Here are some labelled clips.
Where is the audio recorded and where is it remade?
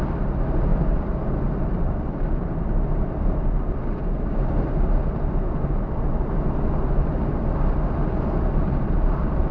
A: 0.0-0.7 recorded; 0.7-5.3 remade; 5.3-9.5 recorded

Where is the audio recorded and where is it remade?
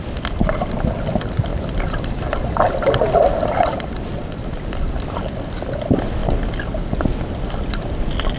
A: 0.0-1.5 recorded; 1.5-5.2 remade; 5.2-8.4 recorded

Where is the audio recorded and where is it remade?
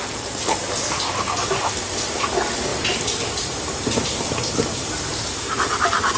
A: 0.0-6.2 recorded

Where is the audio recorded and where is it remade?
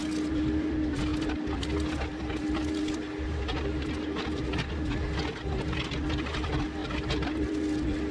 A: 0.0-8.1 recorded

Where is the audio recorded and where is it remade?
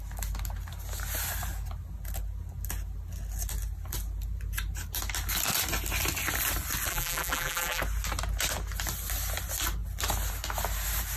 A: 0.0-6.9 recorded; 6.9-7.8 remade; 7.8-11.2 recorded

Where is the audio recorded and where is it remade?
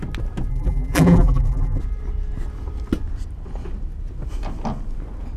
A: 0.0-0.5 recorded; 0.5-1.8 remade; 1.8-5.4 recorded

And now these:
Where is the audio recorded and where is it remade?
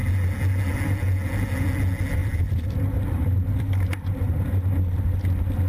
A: 0.0-2.2 recorded; 2.2-5.2 remade; 5.2-5.7 recorded